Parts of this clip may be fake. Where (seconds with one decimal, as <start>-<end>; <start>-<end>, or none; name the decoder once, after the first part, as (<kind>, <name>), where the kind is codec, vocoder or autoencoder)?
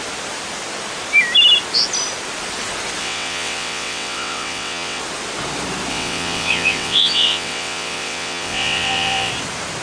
3.0-5.0 (vocoder, WaveNeXt); 5.9-9.3